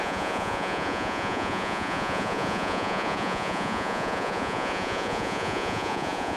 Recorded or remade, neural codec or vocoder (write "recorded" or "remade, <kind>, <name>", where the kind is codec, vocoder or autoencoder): remade, vocoder, Vocos